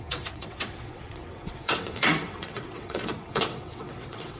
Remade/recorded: remade